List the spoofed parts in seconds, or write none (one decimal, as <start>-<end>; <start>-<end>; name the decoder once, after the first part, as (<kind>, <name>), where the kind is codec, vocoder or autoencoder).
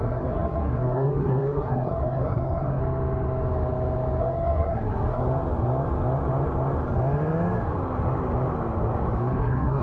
0.0-2.8 (codec, SNAC); 4.2-5.2; 9.4-9.8